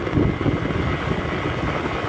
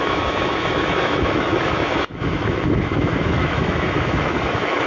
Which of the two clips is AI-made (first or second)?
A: second